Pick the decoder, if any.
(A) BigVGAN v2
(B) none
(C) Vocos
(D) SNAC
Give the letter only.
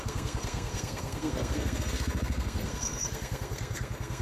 D